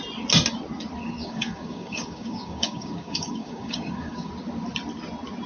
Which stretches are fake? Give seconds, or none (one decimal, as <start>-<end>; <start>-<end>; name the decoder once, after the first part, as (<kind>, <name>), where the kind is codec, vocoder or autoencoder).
1.0-4.3 (codec, DAC)